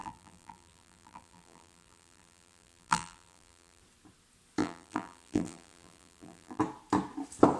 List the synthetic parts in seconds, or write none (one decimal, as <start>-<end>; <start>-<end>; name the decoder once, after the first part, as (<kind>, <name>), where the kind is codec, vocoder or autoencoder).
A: 0.0-3.8 (vocoder, BigVGAN v2); 4.6-6.6